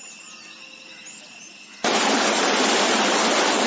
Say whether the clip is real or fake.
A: real